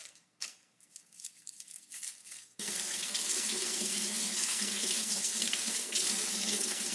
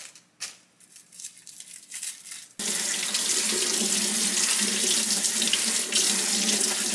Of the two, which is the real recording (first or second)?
second